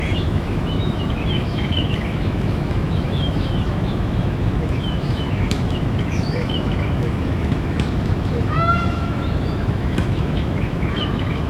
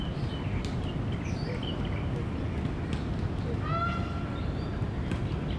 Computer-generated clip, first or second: first